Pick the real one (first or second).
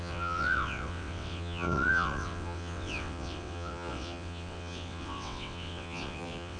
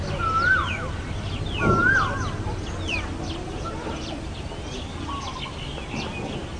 second